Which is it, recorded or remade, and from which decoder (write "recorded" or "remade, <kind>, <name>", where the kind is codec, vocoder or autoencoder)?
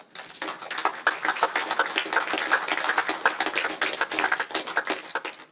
recorded